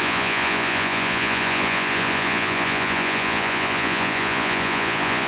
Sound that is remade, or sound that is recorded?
remade